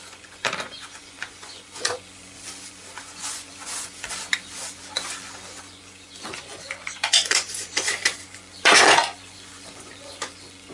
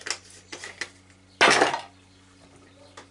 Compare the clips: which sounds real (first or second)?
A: second